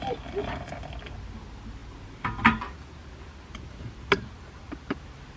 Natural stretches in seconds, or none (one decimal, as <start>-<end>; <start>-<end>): 0.0-1.8; 4.1-5.4